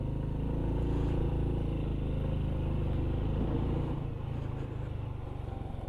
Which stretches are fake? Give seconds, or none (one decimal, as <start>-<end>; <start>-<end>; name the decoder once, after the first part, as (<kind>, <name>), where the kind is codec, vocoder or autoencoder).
0.6-1.3 (vocoder, Vocos)